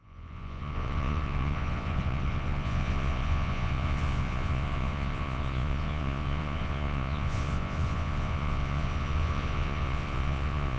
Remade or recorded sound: remade